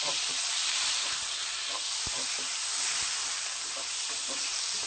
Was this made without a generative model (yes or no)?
yes